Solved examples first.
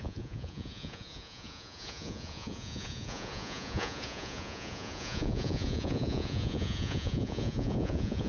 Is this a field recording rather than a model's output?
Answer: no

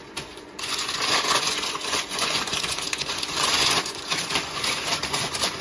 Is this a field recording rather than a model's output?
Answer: no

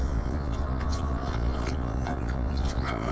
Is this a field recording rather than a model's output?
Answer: no